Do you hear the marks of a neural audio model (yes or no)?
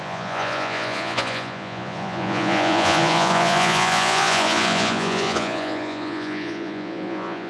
yes